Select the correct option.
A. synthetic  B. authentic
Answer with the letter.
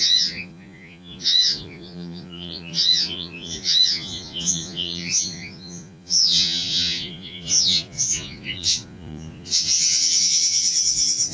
A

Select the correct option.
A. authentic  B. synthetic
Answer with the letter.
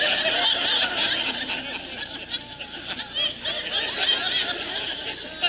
A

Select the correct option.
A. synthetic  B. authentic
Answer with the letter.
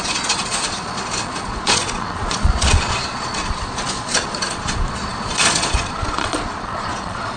A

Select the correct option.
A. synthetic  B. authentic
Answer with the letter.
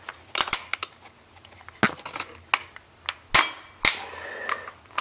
B